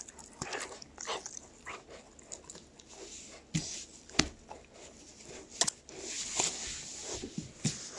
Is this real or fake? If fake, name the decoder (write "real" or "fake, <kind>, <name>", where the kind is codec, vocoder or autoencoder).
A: real